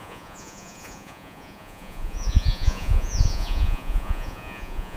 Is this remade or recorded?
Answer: remade